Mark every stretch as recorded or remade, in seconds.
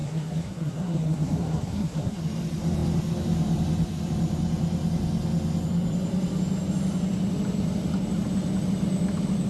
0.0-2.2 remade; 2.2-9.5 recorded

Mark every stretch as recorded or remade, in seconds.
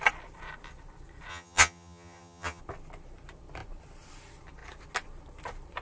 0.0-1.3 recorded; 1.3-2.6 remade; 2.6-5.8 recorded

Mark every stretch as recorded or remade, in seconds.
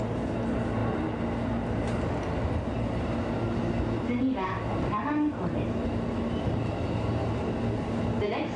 0.0-8.6 recorded